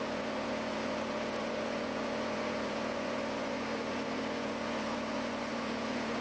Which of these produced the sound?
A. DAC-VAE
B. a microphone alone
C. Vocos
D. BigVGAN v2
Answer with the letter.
C